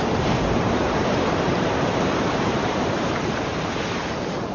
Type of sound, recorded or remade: remade